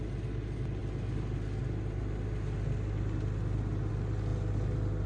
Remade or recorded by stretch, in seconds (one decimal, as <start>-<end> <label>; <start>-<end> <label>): 0.0-5.1 recorded